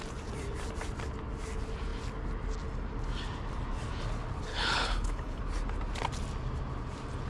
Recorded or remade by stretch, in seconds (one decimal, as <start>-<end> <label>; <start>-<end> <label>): 0.0-4.5 recorded; 4.5-5.4 remade; 5.4-7.3 recorded